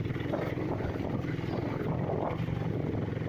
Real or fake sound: real